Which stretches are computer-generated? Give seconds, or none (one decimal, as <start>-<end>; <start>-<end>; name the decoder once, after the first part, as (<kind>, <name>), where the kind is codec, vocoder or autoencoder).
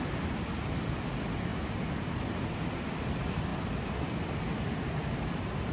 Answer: none